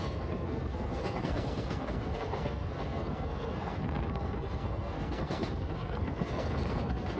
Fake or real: fake